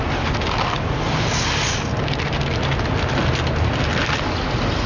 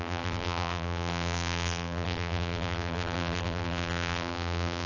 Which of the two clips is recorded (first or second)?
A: first